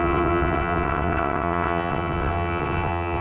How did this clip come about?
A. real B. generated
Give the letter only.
B